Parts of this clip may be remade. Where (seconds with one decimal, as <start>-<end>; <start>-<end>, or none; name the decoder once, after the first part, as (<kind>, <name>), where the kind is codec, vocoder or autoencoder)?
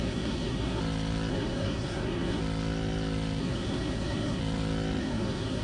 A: 0.0-0.8 (codec, SNAC); 1.3-2.4; 3.4-4.4; 5.0-5.6